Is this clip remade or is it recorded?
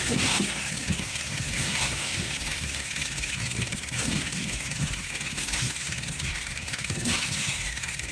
remade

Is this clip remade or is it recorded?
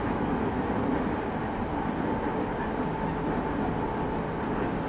recorded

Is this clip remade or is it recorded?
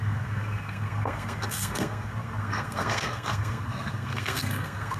remade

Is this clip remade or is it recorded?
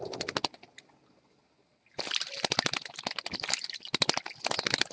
recorded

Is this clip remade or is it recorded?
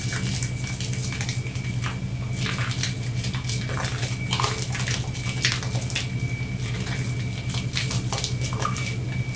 recorded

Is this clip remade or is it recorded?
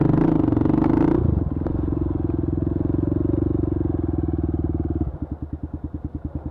recorded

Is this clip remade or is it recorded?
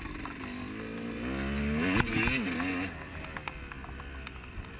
recorded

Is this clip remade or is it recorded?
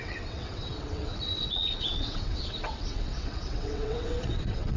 remade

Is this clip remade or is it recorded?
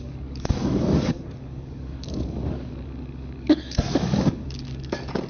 remade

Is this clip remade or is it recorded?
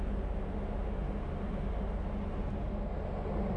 recorded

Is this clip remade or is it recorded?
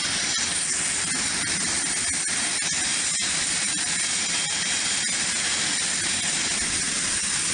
recorded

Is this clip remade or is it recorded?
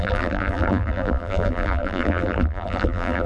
remade